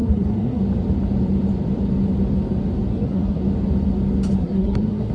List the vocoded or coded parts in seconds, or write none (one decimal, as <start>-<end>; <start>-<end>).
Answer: 0.0-0.6; 2.9-3.4; 4.4-5.1